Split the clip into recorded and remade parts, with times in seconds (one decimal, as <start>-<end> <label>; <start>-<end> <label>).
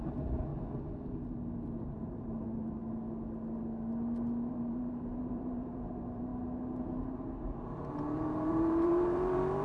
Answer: 0.0-0.5 remade; 0.5-1.8 recorded; 1.8-2.8 remade; 2.8-4.5 recorded; 4.5-6.3 remade; 6.3-7.6 recorded; 7.6-9.6 remade